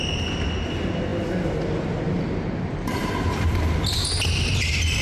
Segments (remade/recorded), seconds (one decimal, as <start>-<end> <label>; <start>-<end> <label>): 0.0-5.0 recorded